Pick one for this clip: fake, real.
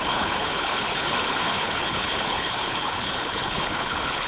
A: fake